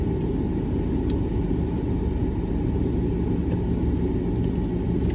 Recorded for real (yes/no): yes